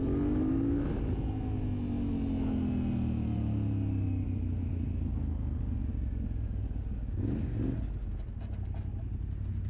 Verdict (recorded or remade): recorded